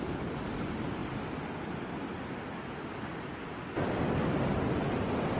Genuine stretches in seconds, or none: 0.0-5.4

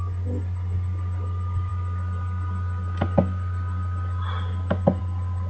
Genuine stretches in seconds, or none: 0.0-5.5

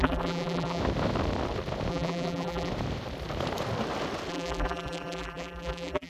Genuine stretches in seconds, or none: 0.8-1.9; 2.7-4.3

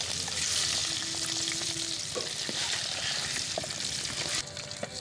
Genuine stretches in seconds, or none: 0.0-5.0